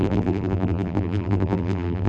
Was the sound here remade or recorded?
remade